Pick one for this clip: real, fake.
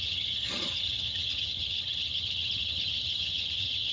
fake